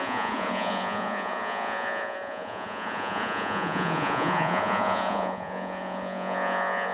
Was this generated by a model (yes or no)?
yes